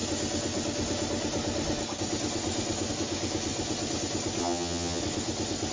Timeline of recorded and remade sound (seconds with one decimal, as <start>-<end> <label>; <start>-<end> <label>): 0.0-4.4 recorded; 4.4-5.0 remade; 5.0-5.7 recorded